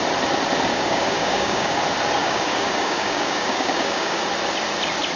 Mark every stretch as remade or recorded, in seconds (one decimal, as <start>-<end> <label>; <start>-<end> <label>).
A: 0.0-0.7 recorded; 0.7-1.8 remade; 1.8-2.2 recorded; 2.2-4.2 remade; 4.2-5.2 recorded